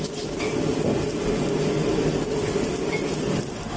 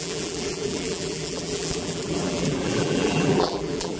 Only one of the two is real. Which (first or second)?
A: first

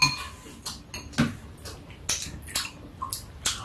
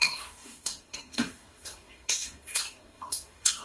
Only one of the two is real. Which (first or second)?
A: first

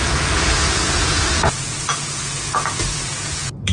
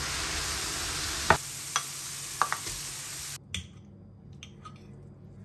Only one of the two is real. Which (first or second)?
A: second